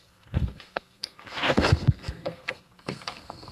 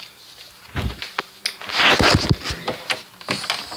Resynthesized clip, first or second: first